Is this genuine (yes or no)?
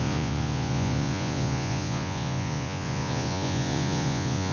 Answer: no